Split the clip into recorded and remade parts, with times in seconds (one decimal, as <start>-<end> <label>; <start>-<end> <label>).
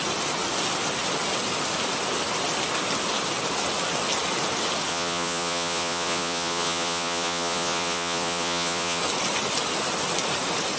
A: 0.0-4.9 recorded; 4.9-9.0 remade; 9.0-10.8 recorded